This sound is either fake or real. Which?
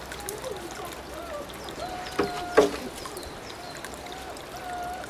real